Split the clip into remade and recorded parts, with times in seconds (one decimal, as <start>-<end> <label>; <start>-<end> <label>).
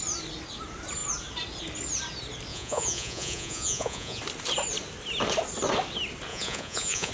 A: 0.0-2.5 recorded; 2.5-4.2 remade; 4.2-6.3 recorded; 6.3-7.1 remade